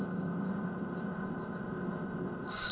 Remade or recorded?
remade